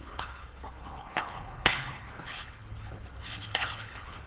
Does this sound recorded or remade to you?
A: remade